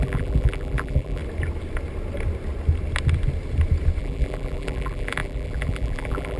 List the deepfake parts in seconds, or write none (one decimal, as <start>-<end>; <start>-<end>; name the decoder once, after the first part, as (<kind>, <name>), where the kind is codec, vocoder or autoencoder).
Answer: 0.0-1.2 (vocoder, BigVGAN v2); 4.0-6.4

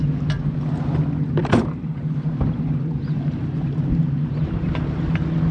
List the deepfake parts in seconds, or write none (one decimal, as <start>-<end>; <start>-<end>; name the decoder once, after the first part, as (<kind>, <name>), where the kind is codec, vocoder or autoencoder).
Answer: 1.4-4.7 (vocoder, BigVGAN v2)